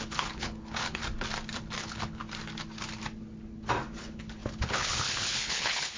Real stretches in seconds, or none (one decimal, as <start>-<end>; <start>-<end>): 1.0-1.8; 2.2-4.0